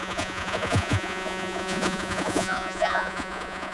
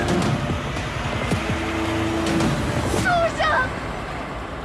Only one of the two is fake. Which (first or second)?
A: first